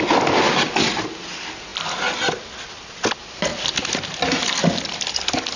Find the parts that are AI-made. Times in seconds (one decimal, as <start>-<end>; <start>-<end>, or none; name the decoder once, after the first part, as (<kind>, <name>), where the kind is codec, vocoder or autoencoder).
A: none